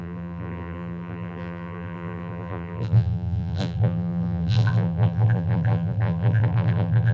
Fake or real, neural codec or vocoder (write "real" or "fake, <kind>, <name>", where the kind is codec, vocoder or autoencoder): fake, vocoder, BigVGAN v2